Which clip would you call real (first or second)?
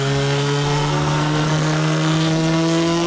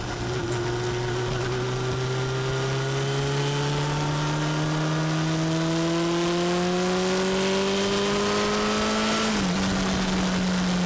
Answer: second